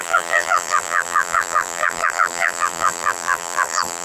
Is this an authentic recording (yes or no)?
no